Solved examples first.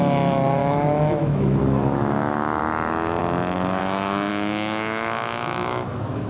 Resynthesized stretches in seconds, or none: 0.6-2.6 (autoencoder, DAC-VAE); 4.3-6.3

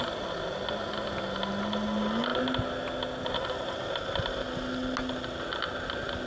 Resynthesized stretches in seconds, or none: none

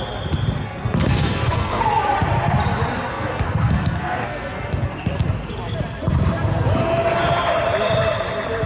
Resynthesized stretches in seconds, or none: 0.6-1.8 (codec, SNAC); 3.1-5.2

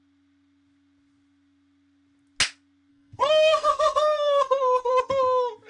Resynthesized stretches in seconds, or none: 2.9-4.9 (codec, SNAC)